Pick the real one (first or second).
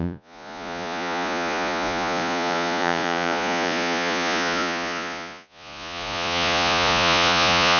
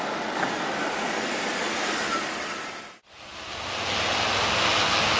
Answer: second